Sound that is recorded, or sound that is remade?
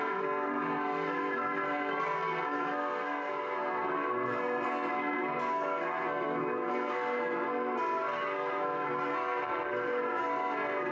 remade